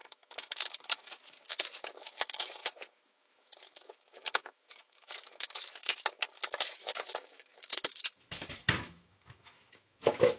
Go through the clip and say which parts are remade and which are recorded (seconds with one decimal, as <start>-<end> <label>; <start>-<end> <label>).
0.0-10.4 remade